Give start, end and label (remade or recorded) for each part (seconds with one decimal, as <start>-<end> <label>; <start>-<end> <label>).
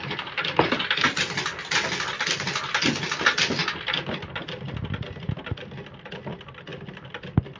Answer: 0.0-7.6 recorded